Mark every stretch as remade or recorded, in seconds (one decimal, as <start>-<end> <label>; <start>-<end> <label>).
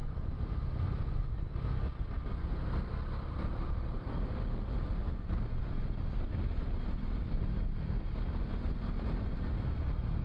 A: 0.0-10.2 recorded